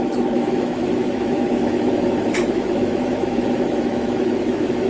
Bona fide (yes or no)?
no